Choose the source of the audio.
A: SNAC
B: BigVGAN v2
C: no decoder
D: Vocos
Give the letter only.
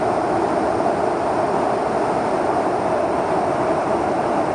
C